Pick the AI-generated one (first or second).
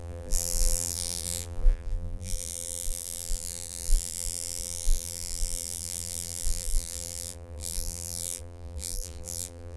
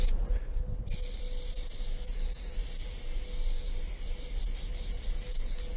first